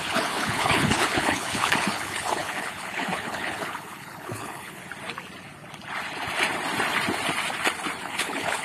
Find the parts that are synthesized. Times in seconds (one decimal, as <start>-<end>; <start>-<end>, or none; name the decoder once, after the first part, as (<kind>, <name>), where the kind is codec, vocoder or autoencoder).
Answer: 0.0-4.8 (codec, HILCodec); 8.0-8.6